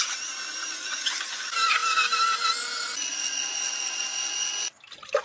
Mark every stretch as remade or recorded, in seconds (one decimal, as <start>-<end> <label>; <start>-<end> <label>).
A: 0.0-5.2 recorded